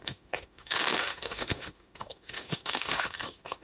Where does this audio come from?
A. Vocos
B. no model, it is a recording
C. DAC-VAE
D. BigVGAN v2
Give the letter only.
C